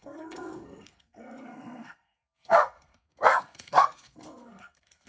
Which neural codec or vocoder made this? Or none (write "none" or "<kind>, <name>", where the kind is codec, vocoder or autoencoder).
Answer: codec, SNAC